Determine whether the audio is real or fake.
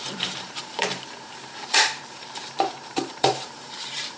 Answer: fake